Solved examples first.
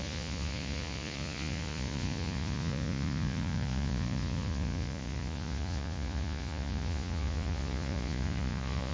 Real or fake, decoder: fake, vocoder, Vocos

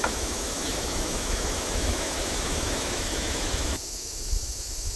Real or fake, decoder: fake, autoencoder, DAC-VAE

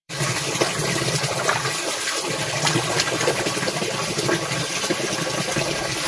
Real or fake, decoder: fake, vocoder, BigVGAN v2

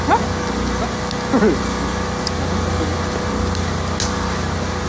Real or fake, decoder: real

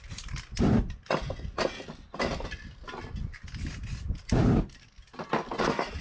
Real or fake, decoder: real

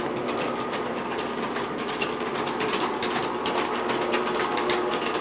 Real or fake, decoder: real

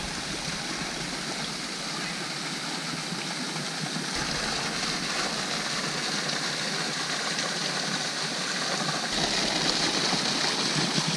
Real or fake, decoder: real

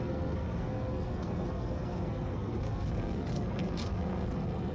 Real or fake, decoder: fake, codec, SNAC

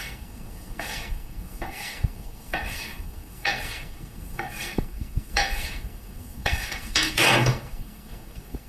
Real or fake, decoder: fake, codec, SNAC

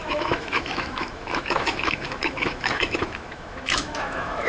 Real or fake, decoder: fake, autoencoder, DAC-VAE